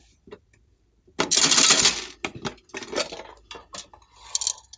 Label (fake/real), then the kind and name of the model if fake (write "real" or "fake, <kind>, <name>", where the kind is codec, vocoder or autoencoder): real